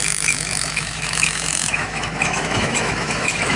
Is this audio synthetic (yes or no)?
yes